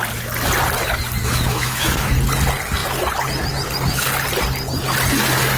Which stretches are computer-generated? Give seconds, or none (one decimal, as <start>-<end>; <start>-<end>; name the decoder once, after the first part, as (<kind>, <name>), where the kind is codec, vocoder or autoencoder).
1.2-2.1 (autoencoder, DAC-VAE)